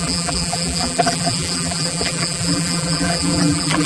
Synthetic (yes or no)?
yes